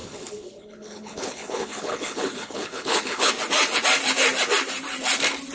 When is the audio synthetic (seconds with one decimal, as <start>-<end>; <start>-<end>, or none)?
0.0-3.3